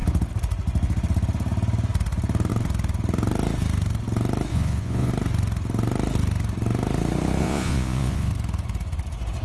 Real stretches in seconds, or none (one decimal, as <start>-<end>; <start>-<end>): 0.0-4.5; 5.1-7.4; 8.3-9.4